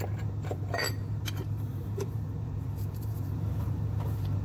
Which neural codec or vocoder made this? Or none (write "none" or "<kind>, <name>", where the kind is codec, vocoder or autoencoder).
vocoder, BigVGAN v2